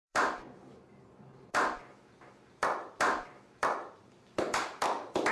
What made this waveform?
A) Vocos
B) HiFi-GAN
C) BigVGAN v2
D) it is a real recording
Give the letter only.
C